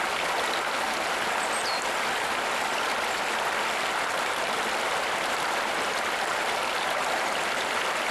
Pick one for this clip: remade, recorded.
recorded